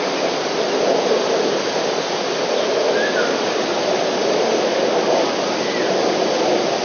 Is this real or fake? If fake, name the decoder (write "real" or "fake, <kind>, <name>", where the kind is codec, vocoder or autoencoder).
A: real